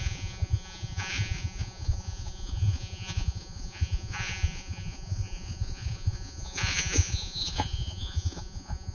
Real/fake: fake